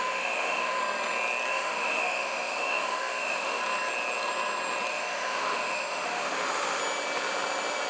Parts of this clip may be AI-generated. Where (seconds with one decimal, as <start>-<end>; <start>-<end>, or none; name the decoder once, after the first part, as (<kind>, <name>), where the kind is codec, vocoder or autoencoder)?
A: 0.0-0.8 (autoencoder, DAC-VAE); 1.5-3.6; 4.9-6.8